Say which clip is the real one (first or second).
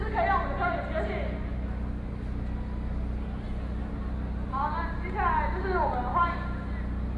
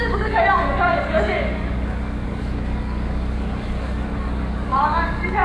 first